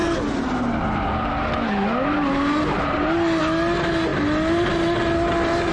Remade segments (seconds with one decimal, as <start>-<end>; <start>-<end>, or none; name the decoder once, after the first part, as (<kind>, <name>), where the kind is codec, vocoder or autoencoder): none